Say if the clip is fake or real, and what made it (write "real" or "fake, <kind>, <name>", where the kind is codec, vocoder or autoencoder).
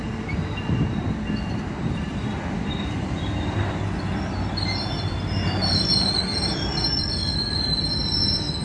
real